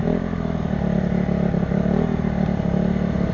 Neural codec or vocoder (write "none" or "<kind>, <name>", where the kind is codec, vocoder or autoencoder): vocoder, BigVGAN v2